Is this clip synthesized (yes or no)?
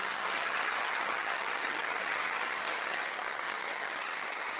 yes